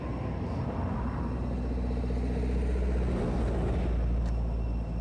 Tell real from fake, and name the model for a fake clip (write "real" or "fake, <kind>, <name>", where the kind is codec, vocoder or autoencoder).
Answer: real